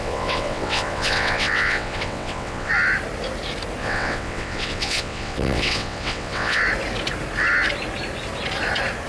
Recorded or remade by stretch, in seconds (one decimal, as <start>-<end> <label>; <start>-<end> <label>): 0.0-2.7 remade; 2.7-3.8 recorded; 3.8-6.6 remade; 6.6-9.1 recorded